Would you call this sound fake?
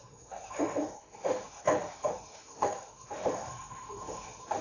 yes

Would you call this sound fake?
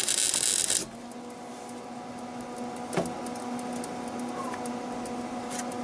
no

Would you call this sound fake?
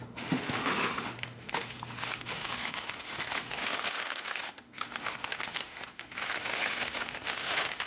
yes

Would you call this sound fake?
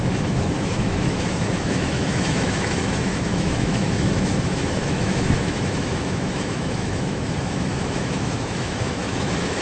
yes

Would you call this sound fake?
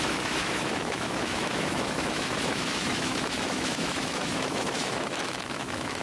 yes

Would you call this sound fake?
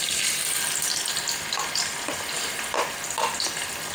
no